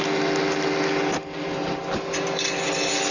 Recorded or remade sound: recorded